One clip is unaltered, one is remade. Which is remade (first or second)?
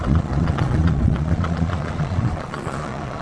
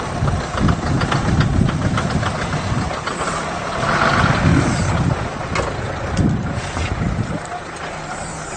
first